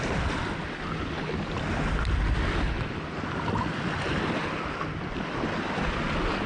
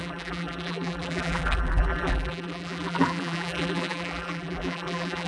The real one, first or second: first